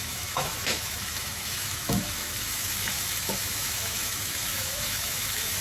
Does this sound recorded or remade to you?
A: remade